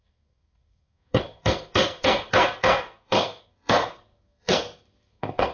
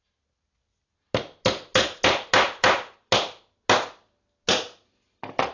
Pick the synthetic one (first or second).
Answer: first